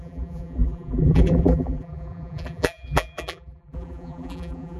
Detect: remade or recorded remade